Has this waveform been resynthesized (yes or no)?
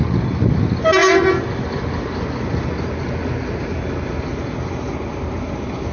no